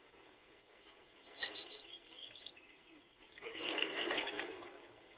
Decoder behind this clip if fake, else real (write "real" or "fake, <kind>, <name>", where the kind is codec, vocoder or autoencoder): fake, codec, SNAC